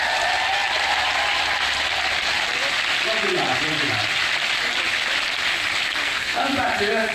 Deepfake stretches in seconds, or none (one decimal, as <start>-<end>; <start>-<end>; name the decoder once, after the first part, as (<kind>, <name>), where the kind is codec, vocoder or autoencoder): 6.0-6.5 (codec, SNAC)